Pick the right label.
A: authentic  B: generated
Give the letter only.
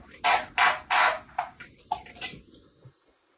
A